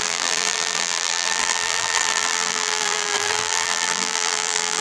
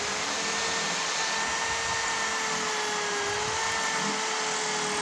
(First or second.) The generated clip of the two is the first